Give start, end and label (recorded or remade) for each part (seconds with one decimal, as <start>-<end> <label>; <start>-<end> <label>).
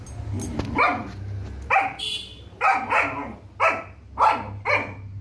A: 0.0-5.2 recorded